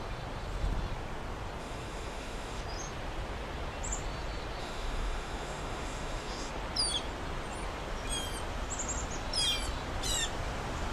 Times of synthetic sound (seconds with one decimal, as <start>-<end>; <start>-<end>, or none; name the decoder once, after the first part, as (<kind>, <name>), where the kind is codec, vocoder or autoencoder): 1.6-2.6 (autoencoder, DAC-VAE); 4.6-6.5